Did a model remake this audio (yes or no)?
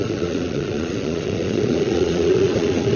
yes